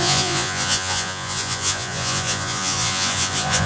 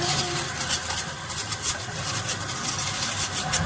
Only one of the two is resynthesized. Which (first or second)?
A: first